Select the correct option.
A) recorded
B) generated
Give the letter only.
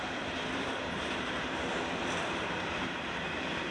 B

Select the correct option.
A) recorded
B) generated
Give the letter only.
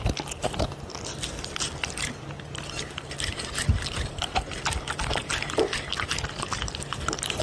A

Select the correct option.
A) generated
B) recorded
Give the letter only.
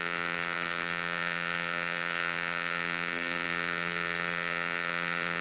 A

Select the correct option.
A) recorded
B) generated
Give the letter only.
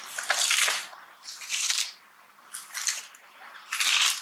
B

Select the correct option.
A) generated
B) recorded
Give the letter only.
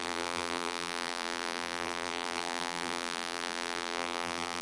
A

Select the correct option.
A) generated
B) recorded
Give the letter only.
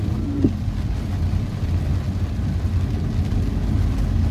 B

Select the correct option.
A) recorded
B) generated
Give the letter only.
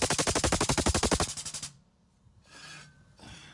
B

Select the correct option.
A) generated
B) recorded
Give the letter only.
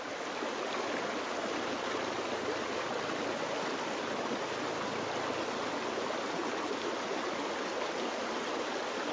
B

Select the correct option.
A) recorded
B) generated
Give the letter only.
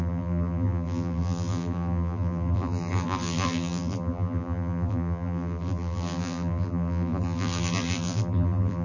B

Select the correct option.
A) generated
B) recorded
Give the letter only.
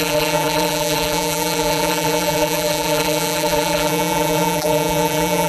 A